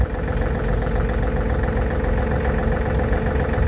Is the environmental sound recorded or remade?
recorded